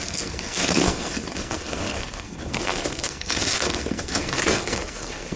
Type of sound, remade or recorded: remade